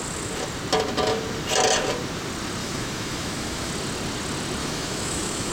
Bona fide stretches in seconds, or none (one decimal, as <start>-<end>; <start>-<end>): 0.0-2.6; 3.7-4.6